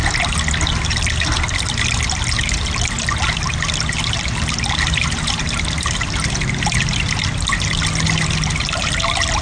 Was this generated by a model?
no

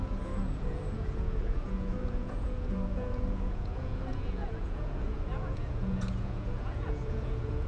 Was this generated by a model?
yes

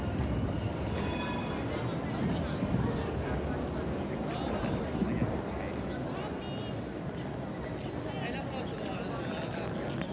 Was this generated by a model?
no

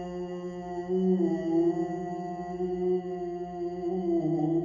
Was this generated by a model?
no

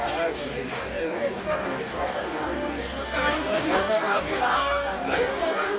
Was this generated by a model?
yes